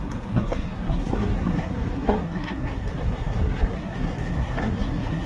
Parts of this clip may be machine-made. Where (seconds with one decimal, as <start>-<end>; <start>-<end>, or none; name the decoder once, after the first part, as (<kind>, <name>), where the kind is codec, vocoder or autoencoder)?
0.0-5.3 (codec, SNAC)